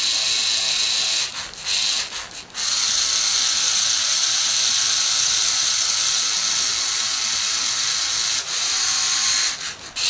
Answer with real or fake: real